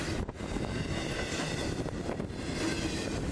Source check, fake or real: real